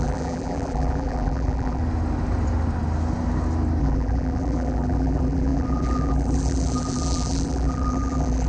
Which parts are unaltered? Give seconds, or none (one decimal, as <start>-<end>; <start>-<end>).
1.8-3.8